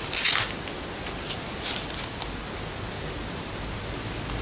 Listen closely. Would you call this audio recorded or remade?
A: recorded